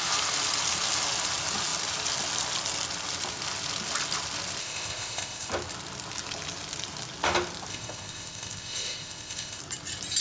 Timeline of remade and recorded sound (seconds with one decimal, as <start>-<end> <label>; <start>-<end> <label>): 0.0-4.6 recorded; 4.6-5.5 remade; 5.5-7.7 recorded; 7.7-9.6 remade; 9.6-10.2 recorded